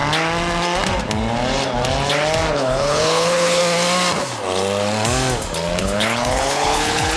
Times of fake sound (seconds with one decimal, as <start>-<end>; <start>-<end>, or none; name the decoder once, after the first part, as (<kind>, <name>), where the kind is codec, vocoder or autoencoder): 2.5-3.6 (codec, HILCodec); 5.8-7.2